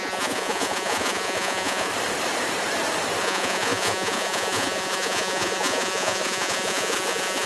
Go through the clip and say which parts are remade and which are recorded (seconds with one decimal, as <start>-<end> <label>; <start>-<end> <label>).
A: 0.0-1.9 remade; 1.9-3.2 recorded; 3.2-7.5 remade